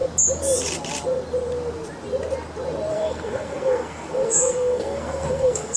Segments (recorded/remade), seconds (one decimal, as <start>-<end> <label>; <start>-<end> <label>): 0.0-2.9 recorded; 2.9-5.8 remade